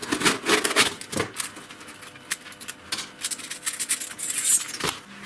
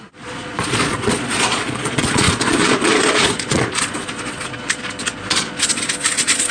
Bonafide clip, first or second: first